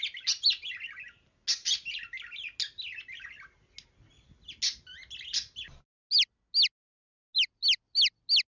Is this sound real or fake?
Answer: real